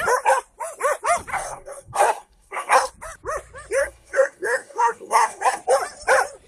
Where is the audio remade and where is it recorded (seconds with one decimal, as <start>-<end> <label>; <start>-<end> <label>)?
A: 0.0-1.3 recorded; 1.3-2.9 remade; 2.9-3.8 recorded; 3.8-5.6 remade; 5.6-6.5 recorded